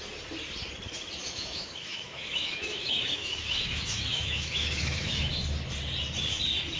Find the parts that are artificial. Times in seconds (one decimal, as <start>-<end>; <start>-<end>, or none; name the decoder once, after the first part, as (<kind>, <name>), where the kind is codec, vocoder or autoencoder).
1.2-5.3 (autoencoder, DAC-VAE)